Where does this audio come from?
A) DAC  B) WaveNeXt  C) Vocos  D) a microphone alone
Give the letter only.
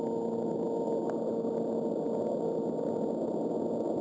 D